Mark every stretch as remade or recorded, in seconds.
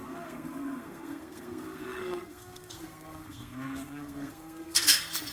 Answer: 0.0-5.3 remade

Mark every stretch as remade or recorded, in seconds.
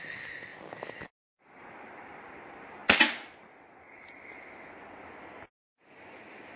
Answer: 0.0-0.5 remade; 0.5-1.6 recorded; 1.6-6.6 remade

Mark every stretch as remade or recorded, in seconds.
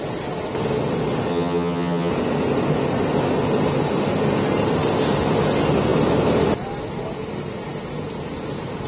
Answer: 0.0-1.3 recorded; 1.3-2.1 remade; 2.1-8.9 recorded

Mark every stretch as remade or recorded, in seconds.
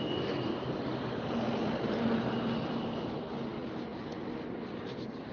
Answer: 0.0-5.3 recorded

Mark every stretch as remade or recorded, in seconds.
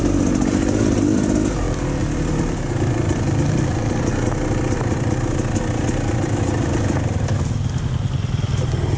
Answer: 0.0-9.0 recorded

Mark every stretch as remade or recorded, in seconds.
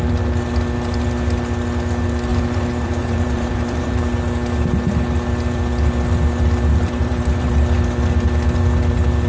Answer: 0.0-2.3 recorded; 2.3-4.1 remade; 4.1-6.7 recorded; 6.7-7.5 remade; 7.5-9.3 recorded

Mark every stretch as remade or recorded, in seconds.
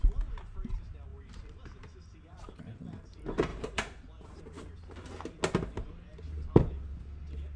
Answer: 0.0-1.1 recorded; 1.1-2.6 remade; 2.6-3.5 recorded; 3.5-4.4 remade; 4.4-7.6 recorded